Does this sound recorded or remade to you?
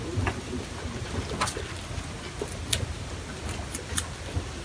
recorded